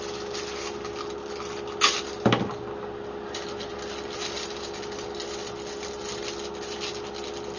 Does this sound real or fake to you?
real